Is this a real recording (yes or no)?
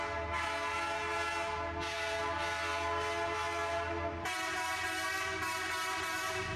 yes